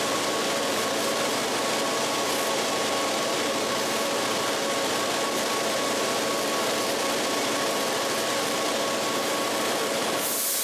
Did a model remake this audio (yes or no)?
yes